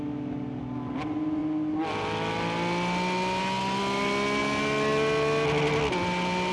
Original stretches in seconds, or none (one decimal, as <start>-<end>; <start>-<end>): 0.0-6.5